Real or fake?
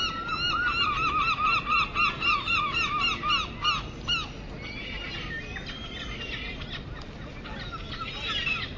real